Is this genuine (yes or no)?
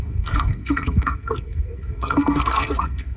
no